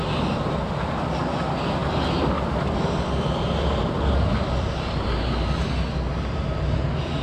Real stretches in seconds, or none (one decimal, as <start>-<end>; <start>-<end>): 0.0-7.2